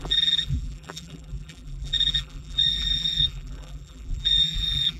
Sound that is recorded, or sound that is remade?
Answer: remade